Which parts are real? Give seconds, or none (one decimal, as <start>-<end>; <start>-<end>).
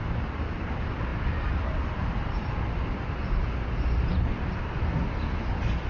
0.0-5.9